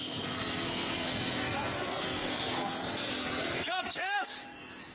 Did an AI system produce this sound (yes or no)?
yes